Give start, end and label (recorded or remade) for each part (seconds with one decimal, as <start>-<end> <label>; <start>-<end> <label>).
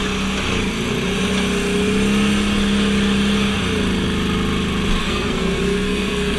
0.0-5.0 recorded; 5.0-6.4 remade